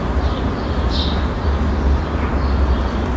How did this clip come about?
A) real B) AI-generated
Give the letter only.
A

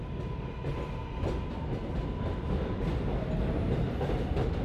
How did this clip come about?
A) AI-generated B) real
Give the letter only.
B